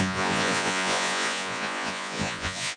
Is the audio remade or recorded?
remade